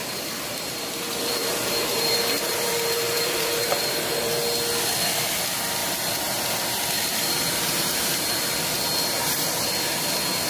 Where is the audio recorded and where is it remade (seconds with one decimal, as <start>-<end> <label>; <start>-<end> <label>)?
0.0-4.3 remade; 4.3-5.8 recorded; 5.8-8.3 remade; 8.3-9.2 recorded; 9.2-9.7 remade; 9.7-10.5 recorded